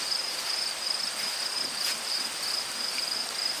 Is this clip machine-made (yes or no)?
no